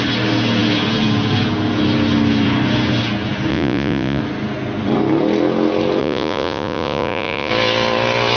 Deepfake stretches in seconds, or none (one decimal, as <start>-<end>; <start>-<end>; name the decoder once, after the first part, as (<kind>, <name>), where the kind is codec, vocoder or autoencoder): 3.5-4.2 (vocoder, Vocos); 6.0-7.5